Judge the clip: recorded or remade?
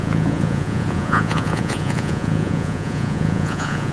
remade